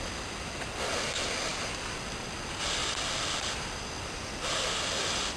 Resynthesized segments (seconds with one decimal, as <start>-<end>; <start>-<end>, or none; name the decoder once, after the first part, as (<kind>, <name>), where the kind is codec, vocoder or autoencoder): 1.5-2.2 (vocoder, BigVGAN v2); 2.8-4.3